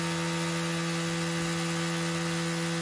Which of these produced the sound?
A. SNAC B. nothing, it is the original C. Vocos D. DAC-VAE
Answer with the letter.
B